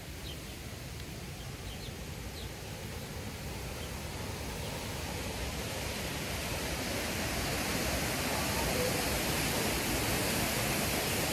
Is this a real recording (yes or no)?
yes